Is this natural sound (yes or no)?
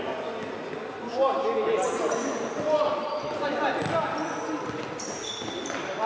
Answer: yes